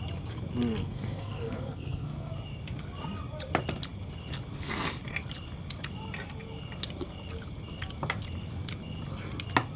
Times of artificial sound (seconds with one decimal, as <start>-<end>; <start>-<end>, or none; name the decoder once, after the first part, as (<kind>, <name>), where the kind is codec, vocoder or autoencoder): 0.8-2.3 (codec, SNAC)